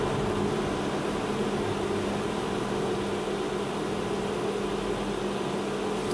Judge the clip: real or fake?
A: real